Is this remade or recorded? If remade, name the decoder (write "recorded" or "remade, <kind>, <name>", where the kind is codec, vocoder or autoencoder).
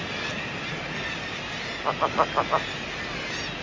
recorded